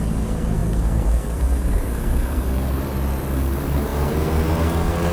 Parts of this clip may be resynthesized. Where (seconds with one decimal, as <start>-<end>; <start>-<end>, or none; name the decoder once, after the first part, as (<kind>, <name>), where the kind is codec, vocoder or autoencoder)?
0.0-2.8 (codec, SNAC); 3.3-5.1